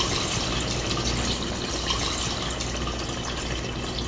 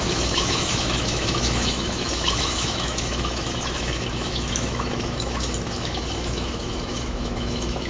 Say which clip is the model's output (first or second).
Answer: second